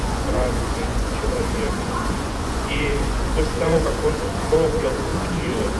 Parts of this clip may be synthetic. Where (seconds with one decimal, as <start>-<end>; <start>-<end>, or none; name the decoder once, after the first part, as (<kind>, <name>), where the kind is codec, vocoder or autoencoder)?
0.0-5.8 (vocoder, Vocos)